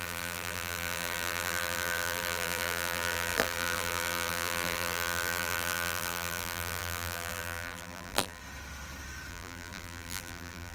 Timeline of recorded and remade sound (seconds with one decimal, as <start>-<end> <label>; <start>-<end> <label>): 0.0-8.4 remade; 8.4-9.3 recorded; 9.3-10.7 remade